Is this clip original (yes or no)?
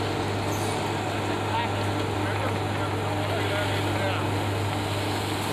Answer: yes